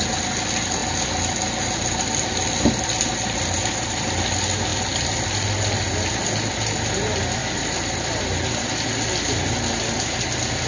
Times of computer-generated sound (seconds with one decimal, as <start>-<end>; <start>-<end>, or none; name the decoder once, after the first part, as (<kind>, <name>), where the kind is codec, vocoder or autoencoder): 4.7-5.5 (vocoder, BigVGAN v2); 7.4-8.2